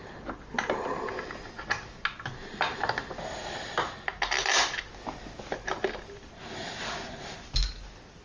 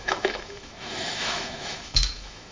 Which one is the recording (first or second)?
first